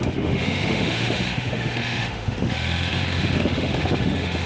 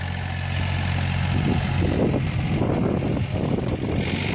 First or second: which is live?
second